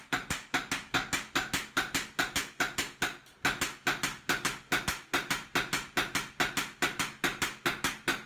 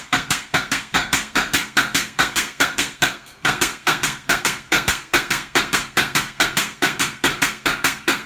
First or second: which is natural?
first